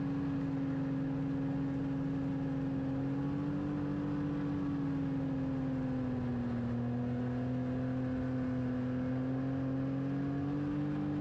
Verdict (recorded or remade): recorded